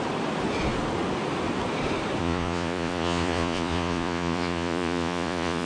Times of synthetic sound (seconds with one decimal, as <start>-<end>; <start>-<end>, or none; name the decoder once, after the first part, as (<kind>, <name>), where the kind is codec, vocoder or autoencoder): 2.2-5.7 (vocoder, Vocos)